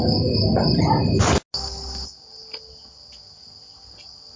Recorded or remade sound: recorded